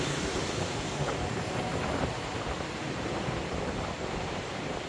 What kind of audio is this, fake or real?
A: fake